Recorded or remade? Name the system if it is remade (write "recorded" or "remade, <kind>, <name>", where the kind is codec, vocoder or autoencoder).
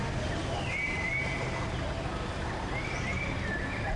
recorded